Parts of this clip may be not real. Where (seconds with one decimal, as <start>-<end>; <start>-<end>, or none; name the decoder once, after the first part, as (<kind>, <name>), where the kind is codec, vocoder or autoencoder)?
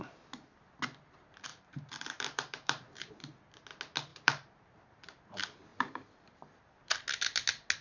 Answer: 1.5-3.1 (vocoder, BigVGAN v2); 4.1-5.2; 5.7-6.6